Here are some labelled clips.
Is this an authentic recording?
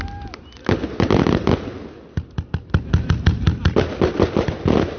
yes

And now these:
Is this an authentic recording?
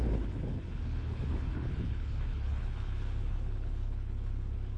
no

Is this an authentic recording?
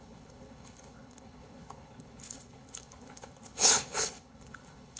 no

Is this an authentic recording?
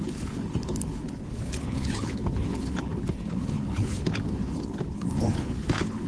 no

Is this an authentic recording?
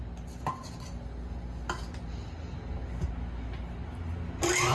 yes